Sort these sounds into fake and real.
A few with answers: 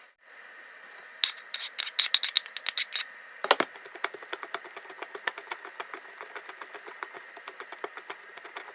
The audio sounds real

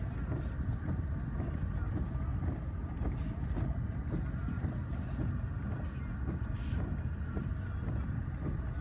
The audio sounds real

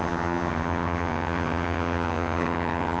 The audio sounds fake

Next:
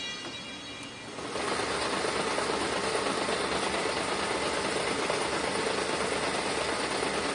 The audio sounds real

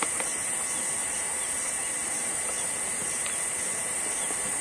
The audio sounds fake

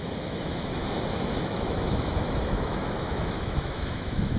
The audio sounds fake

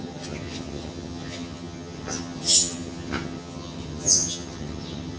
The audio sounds fake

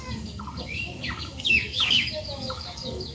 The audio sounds fake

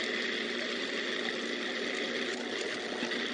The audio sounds real